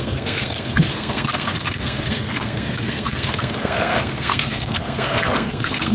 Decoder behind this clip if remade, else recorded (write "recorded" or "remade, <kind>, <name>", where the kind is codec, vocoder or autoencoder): remade, codec, SNAC